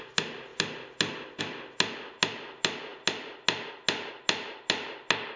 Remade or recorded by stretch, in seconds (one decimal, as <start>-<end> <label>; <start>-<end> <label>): 0.0-5.4 recorded